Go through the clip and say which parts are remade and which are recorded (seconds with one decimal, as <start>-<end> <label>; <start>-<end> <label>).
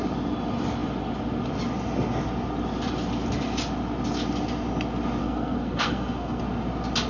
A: 0.0-5.2 recorded; 5.2-6.4 remade; 6.4-7.1 recorded